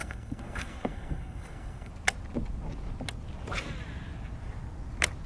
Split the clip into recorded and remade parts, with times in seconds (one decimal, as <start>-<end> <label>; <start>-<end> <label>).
0.0-1.9 remade; 1.9-5.3 recorded